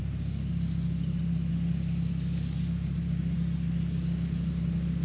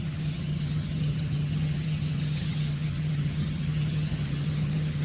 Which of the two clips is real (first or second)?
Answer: first